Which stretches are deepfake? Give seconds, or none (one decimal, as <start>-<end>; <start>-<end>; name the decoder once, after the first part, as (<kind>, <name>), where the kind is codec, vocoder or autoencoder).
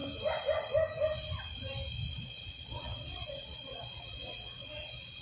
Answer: 2.1-5.2 (vocoder, WaveNeXt)